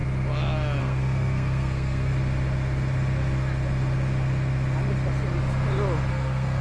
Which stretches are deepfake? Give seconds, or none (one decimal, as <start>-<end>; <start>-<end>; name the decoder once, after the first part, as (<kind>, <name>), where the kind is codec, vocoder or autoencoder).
0.8-2.1 (codec, SNAC); 6.1-6.6